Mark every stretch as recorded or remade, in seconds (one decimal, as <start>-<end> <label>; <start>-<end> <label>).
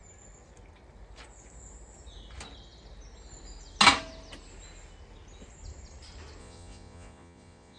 0.0-6.4 recorded; 6.4-7.8 remade